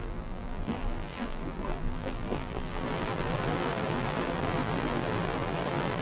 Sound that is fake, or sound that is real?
fake